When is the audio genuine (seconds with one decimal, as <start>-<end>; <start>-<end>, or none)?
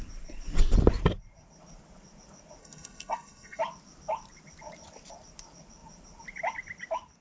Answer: 0.0-2.6; 3.6-7.2